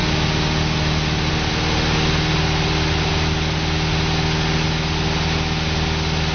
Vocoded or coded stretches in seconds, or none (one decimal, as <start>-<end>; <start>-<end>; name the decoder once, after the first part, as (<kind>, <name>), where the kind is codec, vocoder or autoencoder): none